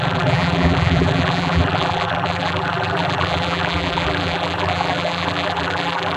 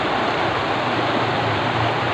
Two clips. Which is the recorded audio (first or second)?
second